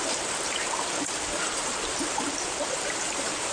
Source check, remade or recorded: remade